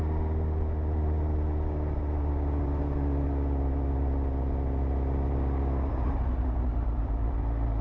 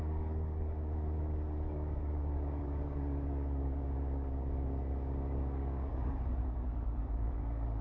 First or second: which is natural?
first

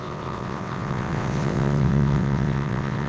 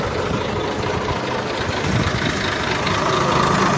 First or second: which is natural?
second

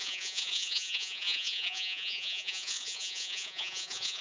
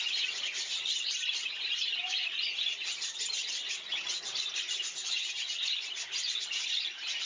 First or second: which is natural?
second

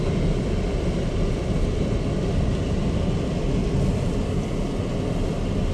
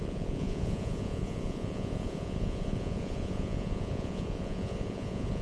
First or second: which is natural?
first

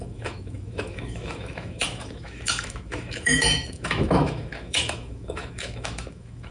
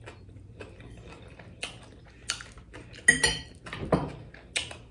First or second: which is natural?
second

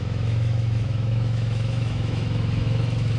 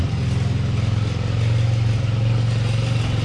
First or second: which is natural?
second